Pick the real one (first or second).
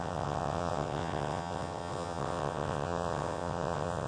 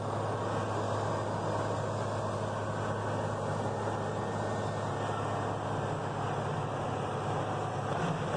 second